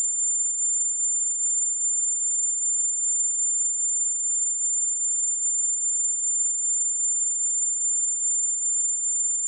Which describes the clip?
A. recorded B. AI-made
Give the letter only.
B